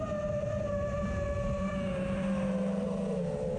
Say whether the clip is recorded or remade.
remade